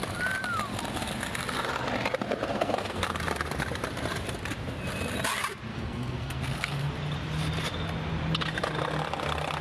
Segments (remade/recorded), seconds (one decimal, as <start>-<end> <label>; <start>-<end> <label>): 0.0-2.5 recorded; 2.5-3.0 remade; 3.0-5.7 recorded; 5.7-6.9 remade; 6.9-9.6 recorded